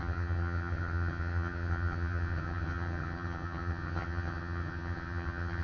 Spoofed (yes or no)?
yes